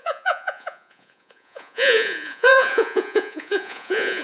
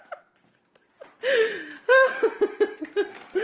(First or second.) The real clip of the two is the second